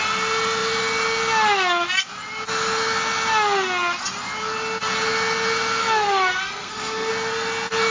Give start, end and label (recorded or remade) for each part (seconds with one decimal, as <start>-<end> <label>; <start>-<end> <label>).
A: 0.0-5.8 recorded; 5.8-7.1 remade; 7.1-7.9 recorded